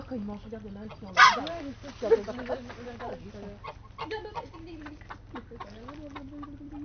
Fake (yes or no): no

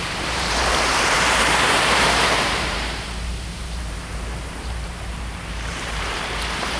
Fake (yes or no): yes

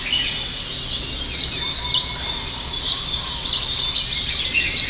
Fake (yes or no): no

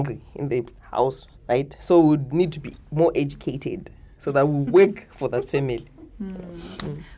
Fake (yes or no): no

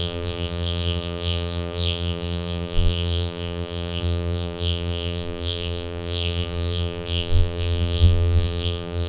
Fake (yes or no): yes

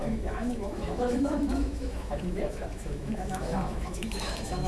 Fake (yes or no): yes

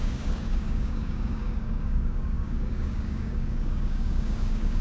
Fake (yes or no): yes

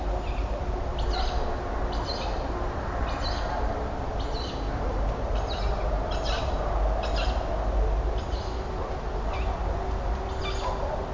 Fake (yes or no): no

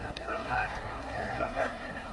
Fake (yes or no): yes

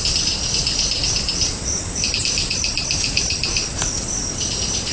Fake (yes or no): yes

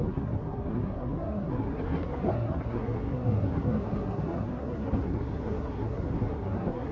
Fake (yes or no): yes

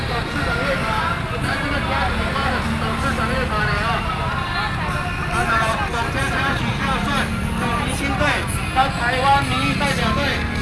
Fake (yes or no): no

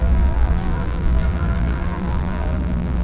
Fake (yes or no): yes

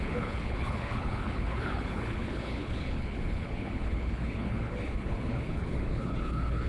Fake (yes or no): yes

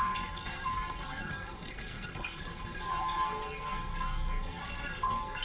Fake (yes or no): yes